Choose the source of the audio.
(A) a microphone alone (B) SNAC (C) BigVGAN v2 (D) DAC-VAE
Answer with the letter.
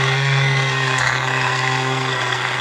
B